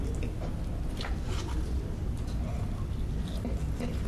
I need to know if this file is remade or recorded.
recorded